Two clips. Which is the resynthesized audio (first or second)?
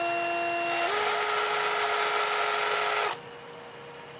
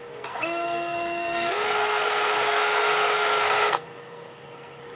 second